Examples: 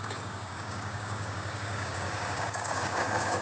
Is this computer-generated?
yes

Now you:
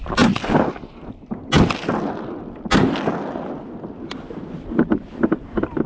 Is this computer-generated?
no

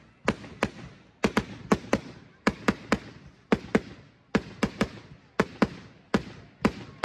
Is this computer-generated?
no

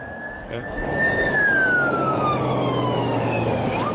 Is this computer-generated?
yes